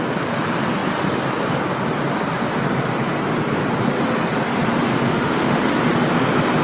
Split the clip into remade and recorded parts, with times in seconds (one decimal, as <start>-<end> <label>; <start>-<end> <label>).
0.0-4.9 recorded; 4.9-5.8 remade; 5.8-6.6 recorded